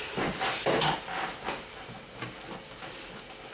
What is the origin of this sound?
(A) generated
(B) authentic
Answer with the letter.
B